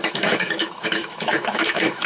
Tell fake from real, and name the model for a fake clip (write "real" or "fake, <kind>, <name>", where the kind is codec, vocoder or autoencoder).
fake, autoencoder, DAC-VAE